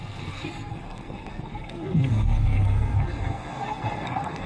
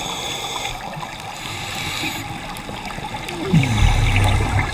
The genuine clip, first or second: second